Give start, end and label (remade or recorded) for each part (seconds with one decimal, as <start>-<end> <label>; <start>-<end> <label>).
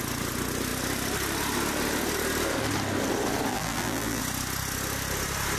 0.0-3.5 recorded; 3.5-4.2 remade; 4.2-5.6 recorded